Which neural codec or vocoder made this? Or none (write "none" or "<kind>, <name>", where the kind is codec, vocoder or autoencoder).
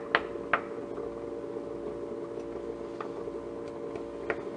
none